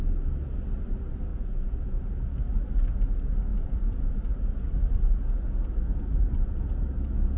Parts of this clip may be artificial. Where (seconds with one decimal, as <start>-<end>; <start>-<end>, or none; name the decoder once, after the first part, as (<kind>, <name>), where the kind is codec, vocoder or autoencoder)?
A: 1.3-2.4 (vocoder, Vocos); 3.5-4.1